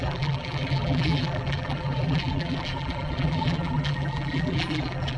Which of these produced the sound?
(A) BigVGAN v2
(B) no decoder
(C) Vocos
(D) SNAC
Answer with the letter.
A